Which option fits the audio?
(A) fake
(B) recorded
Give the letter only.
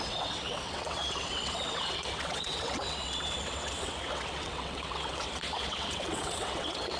A